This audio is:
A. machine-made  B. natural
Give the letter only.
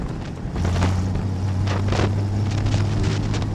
B